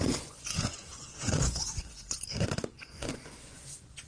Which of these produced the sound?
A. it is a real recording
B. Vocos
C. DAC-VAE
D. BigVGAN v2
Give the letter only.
B